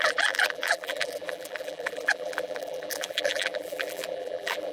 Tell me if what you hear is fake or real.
fake